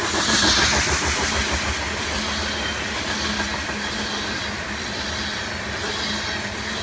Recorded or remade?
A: recorded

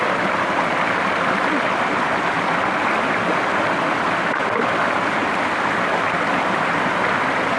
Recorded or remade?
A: recorded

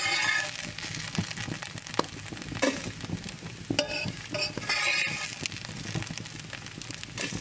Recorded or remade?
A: recorded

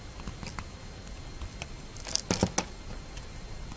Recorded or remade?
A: recorded